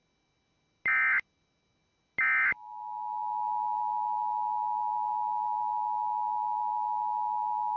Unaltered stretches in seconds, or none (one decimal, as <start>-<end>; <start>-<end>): 0.0-7.8